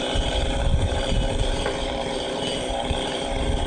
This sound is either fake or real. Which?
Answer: fake